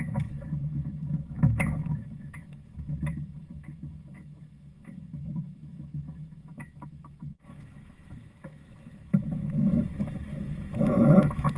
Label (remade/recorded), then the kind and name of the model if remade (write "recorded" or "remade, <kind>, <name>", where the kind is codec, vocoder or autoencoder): remade, autoencoder, DAC-VAE